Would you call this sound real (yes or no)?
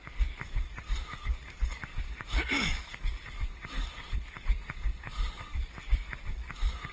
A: no